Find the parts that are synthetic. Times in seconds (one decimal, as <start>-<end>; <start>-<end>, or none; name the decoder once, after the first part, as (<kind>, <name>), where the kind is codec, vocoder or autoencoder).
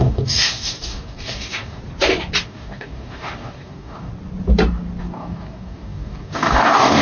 0.0-1.8 (codec, DAC); 2.4-4.1; 5.0-7.0